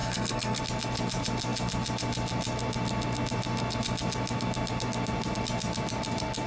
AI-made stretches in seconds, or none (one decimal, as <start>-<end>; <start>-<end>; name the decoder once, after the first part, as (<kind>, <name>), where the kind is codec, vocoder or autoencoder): 0.0-0.6 (codec, SNAC)